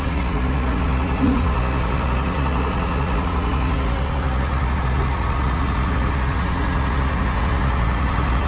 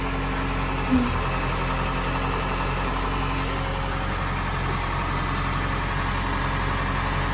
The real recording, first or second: second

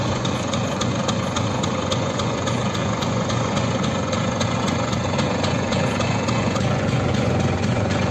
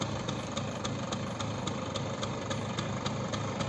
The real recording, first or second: second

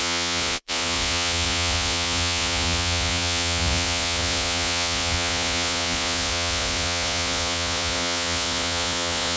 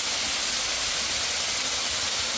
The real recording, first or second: second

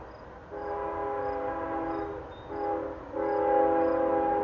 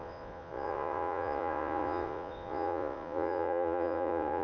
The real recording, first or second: first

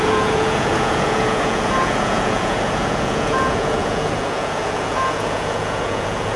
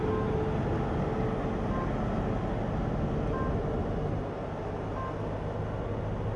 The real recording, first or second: second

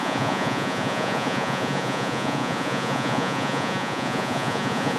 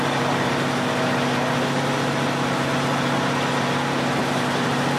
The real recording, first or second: second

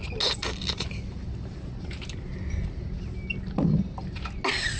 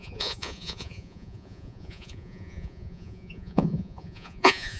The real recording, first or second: first